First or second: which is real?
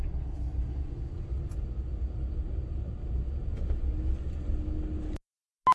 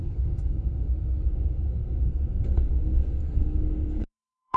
first